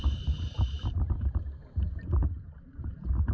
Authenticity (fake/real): fake